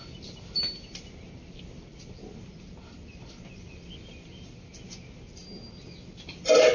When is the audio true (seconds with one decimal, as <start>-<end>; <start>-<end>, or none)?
0.0-6.7